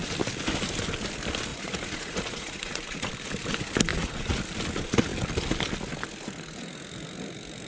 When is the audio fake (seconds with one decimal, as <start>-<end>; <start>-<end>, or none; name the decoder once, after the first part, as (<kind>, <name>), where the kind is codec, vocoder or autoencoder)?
1.5-3.1 (vocoder, Vocos); 3.9-4.4